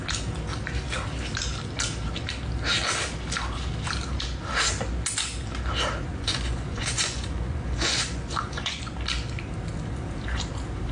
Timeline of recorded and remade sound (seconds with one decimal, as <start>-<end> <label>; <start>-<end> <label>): 0.0-6.1 recorded; 6.1-8.9 remade; 8.9-10.9 recorded